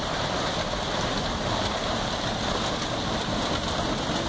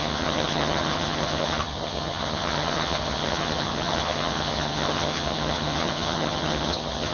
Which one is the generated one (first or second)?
second